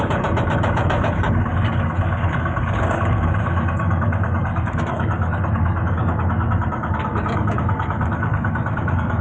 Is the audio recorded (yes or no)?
no